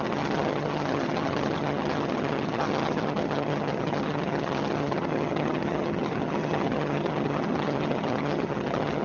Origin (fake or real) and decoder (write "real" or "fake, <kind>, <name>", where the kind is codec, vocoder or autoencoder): fake, vocoder, HiFi-GAN